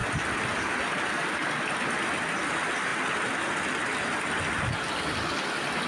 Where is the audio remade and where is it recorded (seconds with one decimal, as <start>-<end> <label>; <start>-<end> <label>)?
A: 0.0-5.9 recorded

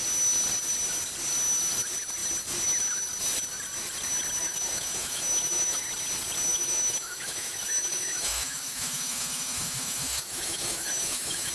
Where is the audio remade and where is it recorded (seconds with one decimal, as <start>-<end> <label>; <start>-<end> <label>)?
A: 0.0-4.4 recorded; 4.4-5.8 remade; 5.8-6.5 recorded; 6.5-11.5 remade

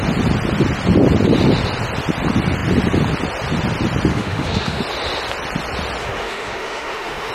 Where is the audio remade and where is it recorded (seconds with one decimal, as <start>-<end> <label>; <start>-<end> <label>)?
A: 0.0-4.1 recorded; 4.1-4.8 remade; 4.8-6.0 recorded; 6.0-7.3 remade

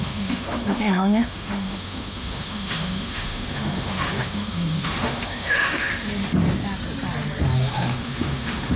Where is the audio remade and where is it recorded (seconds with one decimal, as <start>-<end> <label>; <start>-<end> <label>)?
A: 0.0-5.9 remade; 5.9-7.7 recorded; 7.7-8.8 remade

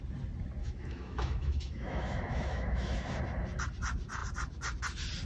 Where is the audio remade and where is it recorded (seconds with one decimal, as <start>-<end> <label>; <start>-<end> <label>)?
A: 0.0-0.6 recorded; 0.6-3.2 remade; 3.2-5.3 recorded

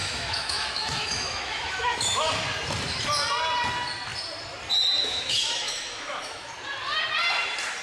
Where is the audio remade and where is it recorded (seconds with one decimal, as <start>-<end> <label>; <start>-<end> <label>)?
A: 0.0-2.3 remade; 2.3-5.0 recorded; 5.0-6.5 remade; 6.5-7.8 recorded

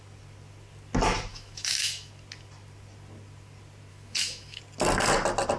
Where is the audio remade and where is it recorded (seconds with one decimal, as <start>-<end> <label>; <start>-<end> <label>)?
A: 0.0-1.3 recorded; 1.3-2.1 remade; 2.1-3.9 recorded; 3.9-4.6 remade; 4.6-5.6 recorded